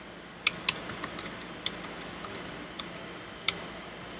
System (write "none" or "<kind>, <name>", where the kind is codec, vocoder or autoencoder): none